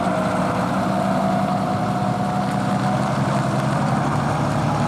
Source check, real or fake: real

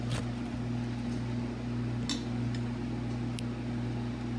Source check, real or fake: real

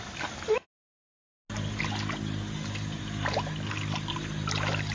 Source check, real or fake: real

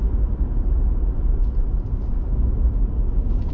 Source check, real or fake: real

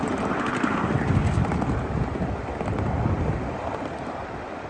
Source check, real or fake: real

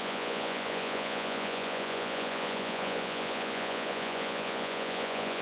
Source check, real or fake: fake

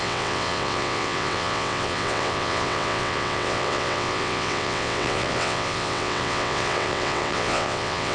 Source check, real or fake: fake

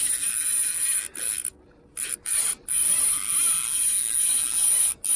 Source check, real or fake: real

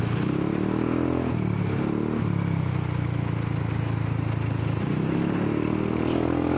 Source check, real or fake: real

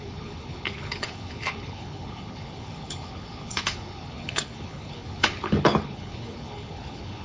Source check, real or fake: fake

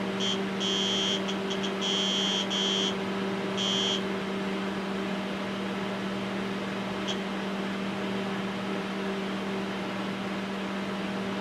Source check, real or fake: real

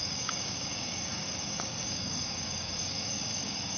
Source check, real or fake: fake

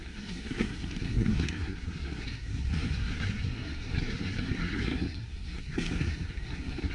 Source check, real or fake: fake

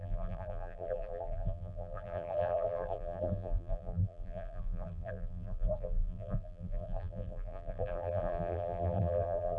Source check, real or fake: fake